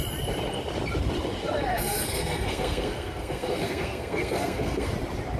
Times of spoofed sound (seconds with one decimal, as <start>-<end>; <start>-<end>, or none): 1.7-4.9